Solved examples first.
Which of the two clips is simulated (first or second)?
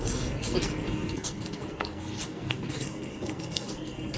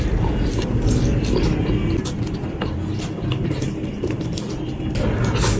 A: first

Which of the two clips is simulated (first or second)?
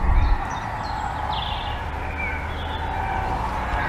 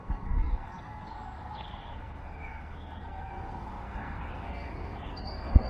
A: second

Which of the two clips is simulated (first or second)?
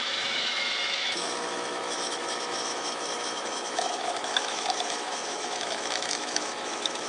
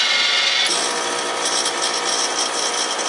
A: first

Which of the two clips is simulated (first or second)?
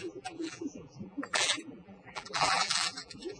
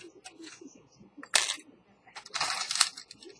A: first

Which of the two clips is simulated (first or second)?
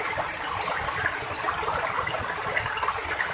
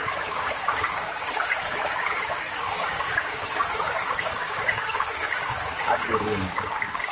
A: second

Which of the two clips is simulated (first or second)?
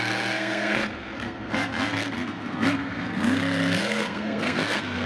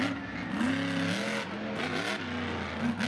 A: first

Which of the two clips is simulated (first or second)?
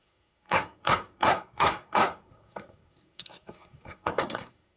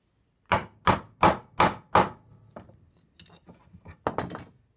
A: first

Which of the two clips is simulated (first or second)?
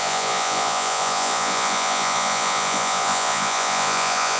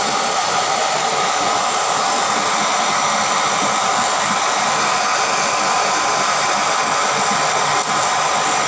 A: first